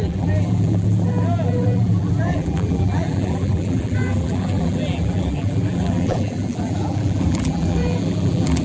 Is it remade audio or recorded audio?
remade